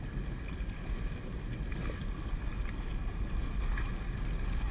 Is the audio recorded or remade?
recorded